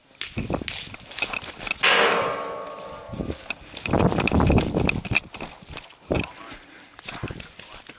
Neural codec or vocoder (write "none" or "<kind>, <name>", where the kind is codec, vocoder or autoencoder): none